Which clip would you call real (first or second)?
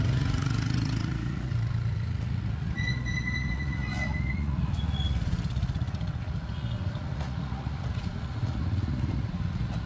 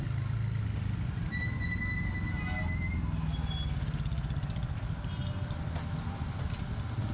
second